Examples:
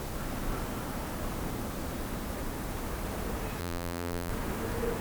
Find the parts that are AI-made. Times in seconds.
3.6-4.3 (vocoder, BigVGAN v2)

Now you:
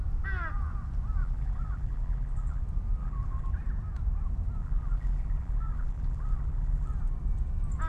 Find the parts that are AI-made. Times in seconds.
1.2-2.6 (vocoder, BigVGAN v2); 3.0-3.5; 4.6-6.9

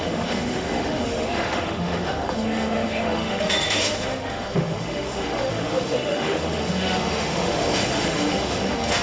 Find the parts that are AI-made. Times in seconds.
0.0-9.0 (autoencoder, DAC-VAE)